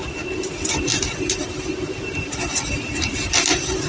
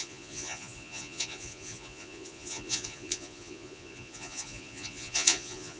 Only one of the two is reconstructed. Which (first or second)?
second